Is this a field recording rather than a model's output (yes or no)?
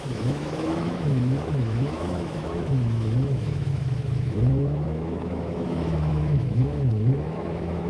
no